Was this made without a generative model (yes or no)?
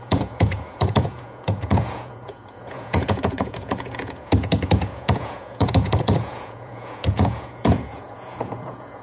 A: no